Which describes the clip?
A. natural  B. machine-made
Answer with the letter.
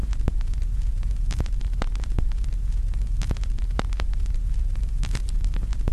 B